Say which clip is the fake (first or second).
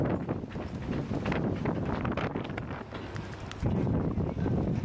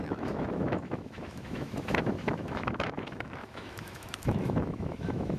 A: second